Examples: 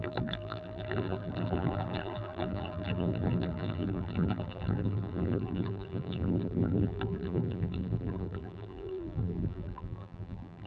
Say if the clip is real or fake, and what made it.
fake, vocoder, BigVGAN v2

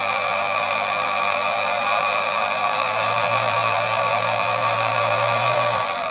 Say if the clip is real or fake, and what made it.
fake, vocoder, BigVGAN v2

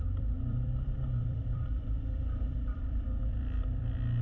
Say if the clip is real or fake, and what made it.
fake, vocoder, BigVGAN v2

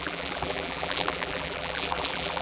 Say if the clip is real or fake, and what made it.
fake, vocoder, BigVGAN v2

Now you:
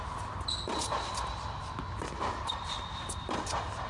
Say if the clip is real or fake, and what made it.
real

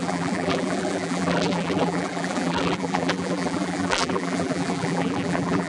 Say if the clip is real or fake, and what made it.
fake, vocoder, BigVGAN v2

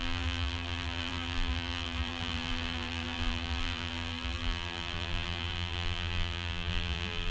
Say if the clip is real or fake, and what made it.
fake, vocoder, BigVGAN v2